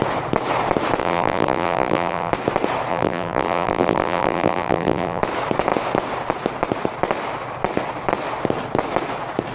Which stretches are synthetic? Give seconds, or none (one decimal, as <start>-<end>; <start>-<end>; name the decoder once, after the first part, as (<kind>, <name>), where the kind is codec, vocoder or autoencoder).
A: 1.0-2.3 (vocoder, BigVGAN v2); 2.9-5.2